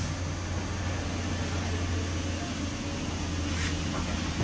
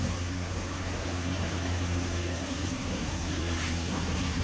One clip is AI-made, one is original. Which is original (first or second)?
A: first